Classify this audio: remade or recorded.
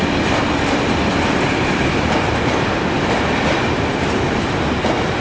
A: recorded